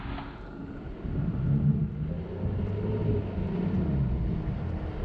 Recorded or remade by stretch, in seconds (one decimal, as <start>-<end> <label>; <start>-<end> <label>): 0.0-5.0 recorded